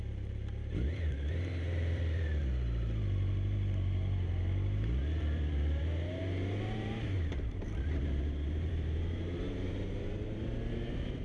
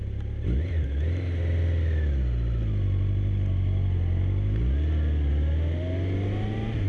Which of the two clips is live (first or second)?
second